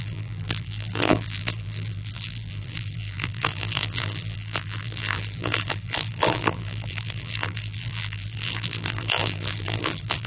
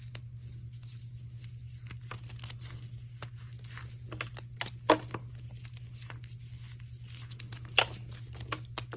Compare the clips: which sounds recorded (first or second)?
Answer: second